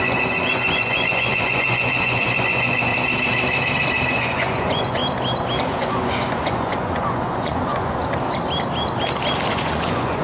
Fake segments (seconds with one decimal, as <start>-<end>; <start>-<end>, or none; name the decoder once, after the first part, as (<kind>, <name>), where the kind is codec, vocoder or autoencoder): 0.0-2.9 (vocoder, Vocos); 4.1-5.0; 5.7-8.0; 9.5-10.2